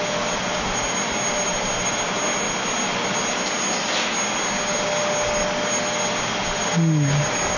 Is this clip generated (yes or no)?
no